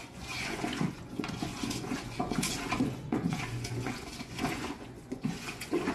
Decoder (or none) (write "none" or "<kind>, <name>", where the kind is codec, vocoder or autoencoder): vocoder, Vocos